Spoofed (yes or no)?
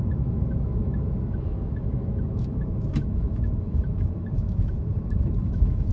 yes